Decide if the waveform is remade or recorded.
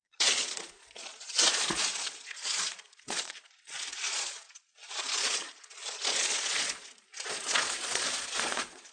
remade